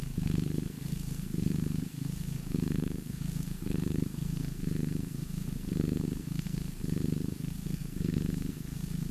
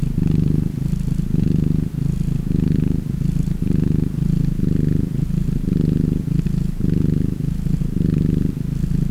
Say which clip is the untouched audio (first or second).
second